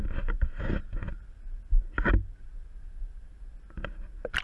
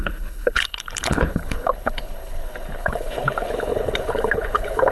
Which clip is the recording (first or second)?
first